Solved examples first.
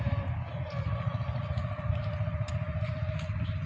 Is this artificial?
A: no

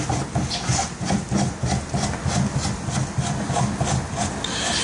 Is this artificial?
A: no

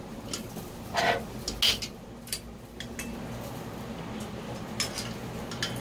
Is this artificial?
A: no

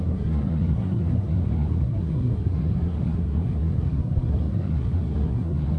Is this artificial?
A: yes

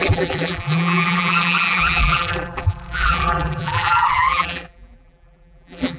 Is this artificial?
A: yes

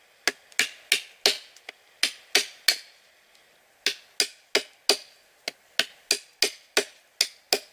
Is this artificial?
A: no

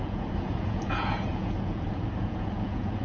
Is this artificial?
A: yes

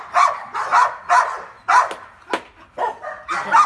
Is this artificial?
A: no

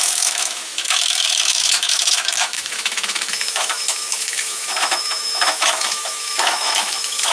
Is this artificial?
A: yes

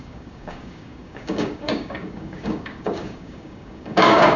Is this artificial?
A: yes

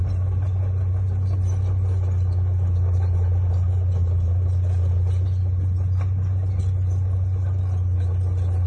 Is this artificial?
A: no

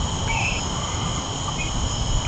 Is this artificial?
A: no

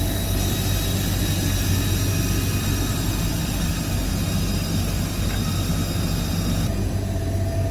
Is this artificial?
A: no